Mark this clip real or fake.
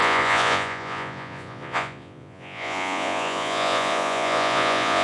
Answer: fake